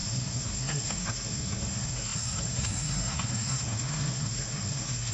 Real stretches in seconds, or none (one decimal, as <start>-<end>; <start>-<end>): none